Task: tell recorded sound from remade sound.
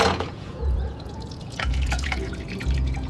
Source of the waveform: remade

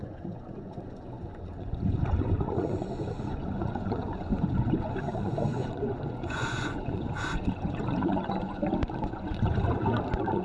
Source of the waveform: remade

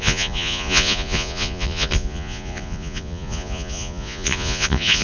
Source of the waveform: remade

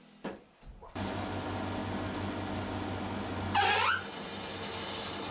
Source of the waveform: recorded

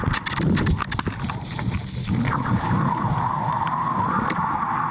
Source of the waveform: recorded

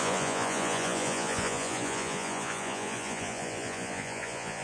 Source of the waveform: remade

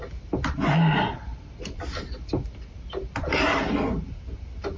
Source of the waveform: recorded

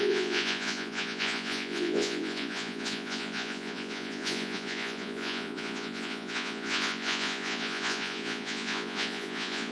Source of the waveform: remade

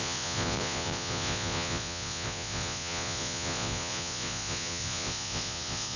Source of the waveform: remade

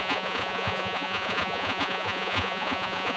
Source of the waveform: remade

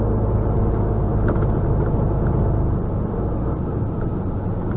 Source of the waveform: recorded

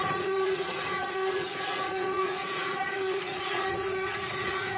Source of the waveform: remade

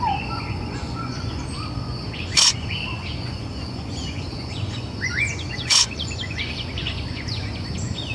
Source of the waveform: remade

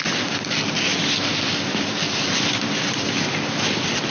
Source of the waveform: recorded